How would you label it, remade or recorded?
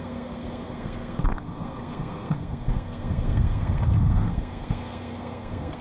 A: remade